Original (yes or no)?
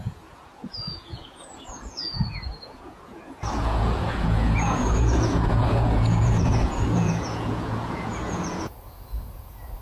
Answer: no